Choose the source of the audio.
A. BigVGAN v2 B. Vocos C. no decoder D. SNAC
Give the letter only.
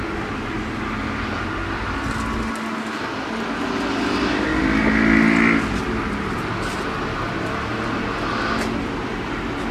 C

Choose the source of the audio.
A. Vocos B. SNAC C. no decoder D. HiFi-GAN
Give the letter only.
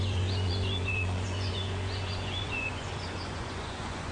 A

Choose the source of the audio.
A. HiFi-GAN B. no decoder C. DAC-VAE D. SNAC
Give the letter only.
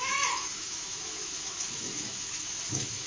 C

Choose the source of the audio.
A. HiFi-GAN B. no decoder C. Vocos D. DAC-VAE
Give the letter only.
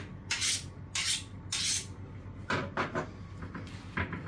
B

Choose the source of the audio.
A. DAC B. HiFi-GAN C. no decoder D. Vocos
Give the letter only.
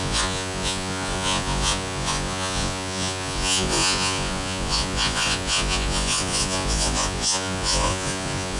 D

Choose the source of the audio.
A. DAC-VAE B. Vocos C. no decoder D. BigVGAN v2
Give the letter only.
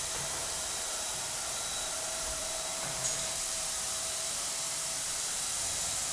D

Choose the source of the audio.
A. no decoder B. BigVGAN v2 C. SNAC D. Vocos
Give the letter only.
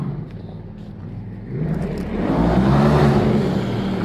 A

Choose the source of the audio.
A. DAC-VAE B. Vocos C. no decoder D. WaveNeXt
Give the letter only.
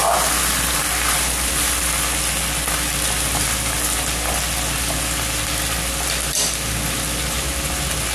C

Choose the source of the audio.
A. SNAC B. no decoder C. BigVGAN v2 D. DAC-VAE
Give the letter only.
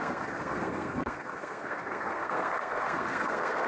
A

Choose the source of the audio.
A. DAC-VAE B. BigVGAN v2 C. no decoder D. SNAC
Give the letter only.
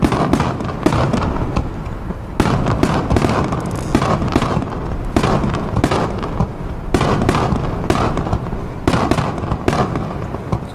C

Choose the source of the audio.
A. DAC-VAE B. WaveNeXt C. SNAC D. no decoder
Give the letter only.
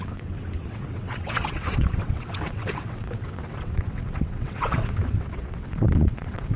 B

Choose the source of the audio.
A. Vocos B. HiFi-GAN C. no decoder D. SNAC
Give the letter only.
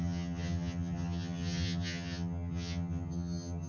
B